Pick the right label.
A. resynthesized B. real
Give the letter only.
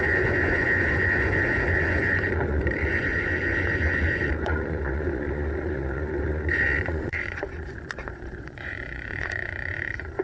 A